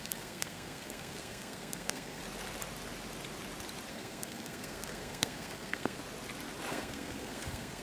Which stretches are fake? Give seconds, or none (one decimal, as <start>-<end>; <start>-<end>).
0.0-2.2; 3.9-6.0; 6.7-7.8